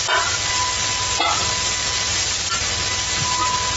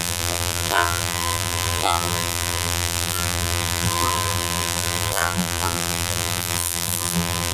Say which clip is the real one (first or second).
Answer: first